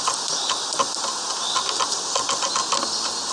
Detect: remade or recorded recorded